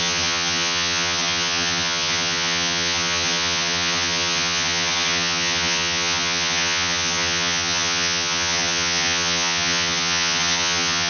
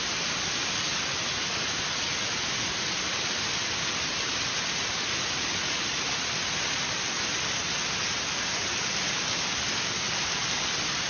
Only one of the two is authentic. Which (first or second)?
second